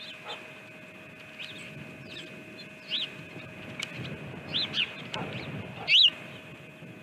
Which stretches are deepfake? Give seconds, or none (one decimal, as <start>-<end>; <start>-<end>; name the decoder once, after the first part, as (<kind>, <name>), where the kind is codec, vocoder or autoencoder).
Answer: none